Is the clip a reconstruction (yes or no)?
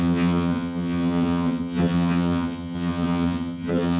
yes